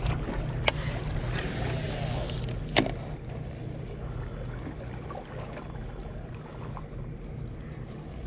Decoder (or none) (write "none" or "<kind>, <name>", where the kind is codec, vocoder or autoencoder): none